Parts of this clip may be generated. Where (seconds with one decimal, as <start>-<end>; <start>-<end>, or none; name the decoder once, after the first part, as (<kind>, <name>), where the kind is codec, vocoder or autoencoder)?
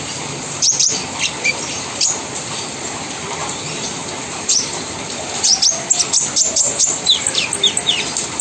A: 0.0-4.0 (vocoder, BigVGAN v2); 4.7-5.5; 6.9-8.4